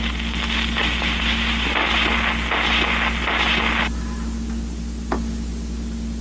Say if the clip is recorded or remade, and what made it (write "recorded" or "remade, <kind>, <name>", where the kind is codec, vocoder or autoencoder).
recorded